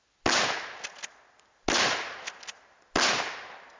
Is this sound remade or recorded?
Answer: recorded